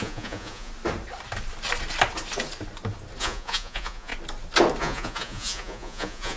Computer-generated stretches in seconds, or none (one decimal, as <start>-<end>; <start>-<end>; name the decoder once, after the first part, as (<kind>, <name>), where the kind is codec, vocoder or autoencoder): 0.0-0.7 (vocoder, Vocos); 3.2-4.1; 4.8-6.4